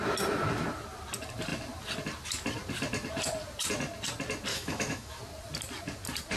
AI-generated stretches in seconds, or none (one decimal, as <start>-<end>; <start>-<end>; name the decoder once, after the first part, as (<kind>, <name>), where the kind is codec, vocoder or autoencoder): 4.5-5.2 (autoencoder, DAC-VAE)